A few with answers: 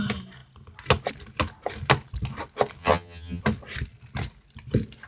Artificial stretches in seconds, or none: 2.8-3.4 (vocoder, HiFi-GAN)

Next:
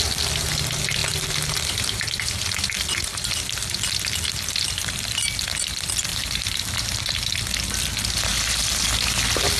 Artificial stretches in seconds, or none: 6.1-7.1 (vocoder, BigVGAN v2)

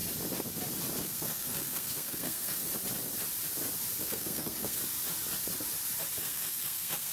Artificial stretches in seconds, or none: 1.0-2.7 (codec, SNAC); 4.0-4.8; 6.2-7.1